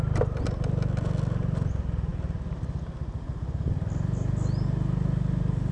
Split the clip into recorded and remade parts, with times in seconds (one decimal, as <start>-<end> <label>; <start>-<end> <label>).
0.0-5.7 recorded